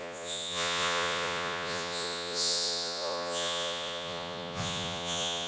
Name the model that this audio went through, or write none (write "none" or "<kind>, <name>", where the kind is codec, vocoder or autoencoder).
vocoder, Vocos